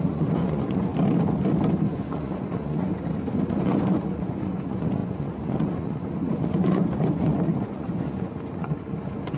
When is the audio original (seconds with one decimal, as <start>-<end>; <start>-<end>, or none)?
0.9-1.9; 2.9-3.5